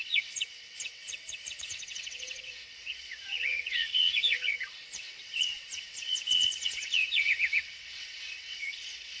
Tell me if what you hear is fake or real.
fake